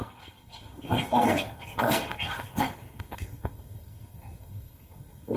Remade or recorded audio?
remade